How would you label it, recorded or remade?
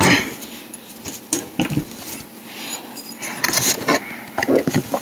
recorded